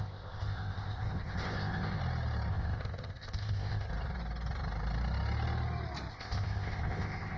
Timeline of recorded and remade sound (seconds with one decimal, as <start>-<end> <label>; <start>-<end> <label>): 0.0-2.0 remade; 2.0-2.5 recorded; 2.5-3.9 remade; 3.9-6.1 recorded; 6.1-7.4 remade